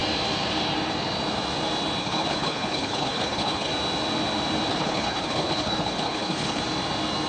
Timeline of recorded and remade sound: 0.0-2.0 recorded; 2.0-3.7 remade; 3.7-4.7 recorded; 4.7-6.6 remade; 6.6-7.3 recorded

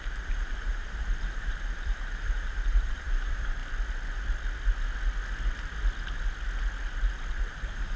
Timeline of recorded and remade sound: 0.0-3.6 remade; 3.6-7.3 recorded; 7.3-8.0 remade

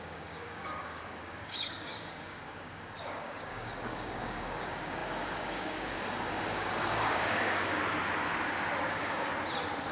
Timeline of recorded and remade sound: 0.0-7.8 remade; 7.8-8.9 recorded; 8.9-9.3 remade; 9.3-9.9 recorded